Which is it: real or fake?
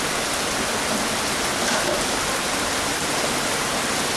real